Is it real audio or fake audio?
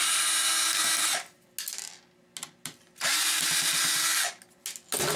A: real